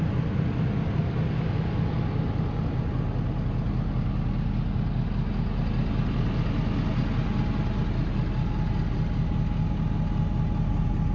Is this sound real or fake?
real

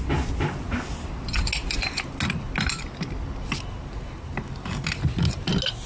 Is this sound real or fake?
real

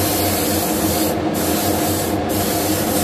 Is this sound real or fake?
real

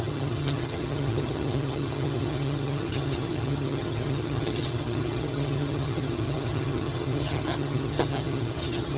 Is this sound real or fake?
fake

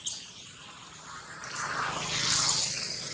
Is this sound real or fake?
real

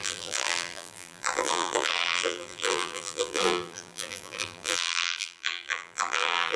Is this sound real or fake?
fake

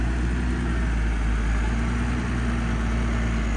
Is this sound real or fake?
real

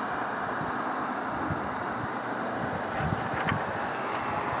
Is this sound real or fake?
real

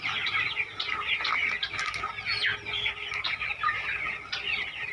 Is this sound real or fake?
real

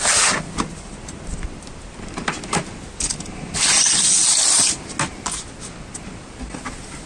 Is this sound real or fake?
real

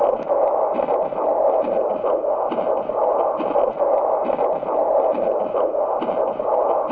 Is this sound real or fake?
real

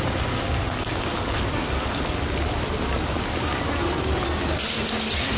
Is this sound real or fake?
real